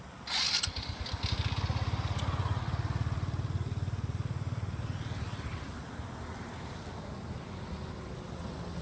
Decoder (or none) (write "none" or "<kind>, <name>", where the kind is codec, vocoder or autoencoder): none